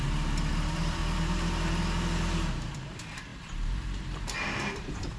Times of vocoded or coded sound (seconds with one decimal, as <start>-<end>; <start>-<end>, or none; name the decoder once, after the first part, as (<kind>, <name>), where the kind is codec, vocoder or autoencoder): 0.0-1.0 (vocoder, BigVGAN v2); 2.8-5.2